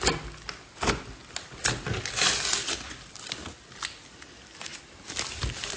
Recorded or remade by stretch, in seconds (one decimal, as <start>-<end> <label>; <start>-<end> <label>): 0.0-5.8 recorded